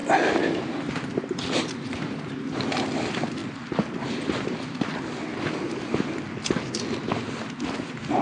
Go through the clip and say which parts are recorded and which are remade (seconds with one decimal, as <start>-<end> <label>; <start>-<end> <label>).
0.0-8.2 recorded